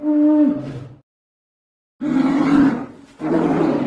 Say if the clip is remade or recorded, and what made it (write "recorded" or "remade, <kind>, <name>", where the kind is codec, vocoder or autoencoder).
recorded